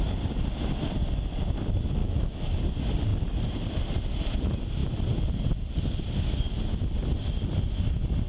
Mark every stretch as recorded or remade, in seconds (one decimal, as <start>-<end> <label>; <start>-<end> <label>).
0.0-2.0 recorded; 2.0-2.5 remade; 2.5-8.3 recorded

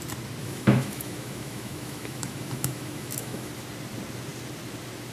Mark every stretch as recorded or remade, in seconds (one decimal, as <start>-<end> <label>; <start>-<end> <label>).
0.0-0.4 recorded; 0.4-3.5 remade; 3.5-5.1 recorded

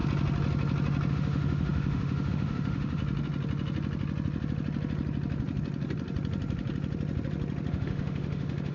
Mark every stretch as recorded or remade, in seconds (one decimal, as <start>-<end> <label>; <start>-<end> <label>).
0.0-1.1 recorded; 1.1-3.0 remade; 3.0-7.7 recorded; 7.7-8.7 remade

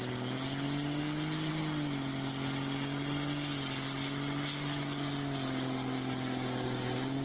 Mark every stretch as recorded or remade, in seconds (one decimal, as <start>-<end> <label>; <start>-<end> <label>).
0.0-7.2 recorded

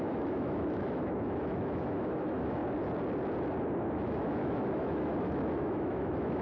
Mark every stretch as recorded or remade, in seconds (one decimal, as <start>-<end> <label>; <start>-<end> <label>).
0.0-2.6 remade; 2.6-4.0 recorded; 4.0-6.4 remade